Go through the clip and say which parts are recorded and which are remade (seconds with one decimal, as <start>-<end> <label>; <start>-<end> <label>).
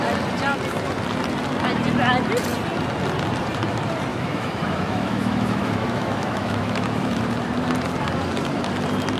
0.0-4.1 recorded; 4.1-7.2 remade; 7.2-9.2 recorded